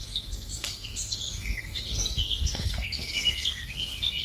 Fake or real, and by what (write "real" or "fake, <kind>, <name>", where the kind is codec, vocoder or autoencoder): fake, codec, SNAC